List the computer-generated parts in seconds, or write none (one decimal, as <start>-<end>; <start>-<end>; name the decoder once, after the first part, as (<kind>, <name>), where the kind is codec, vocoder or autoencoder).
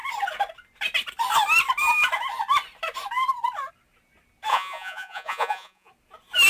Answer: 4.5-5.9 (vocoder, Vocos)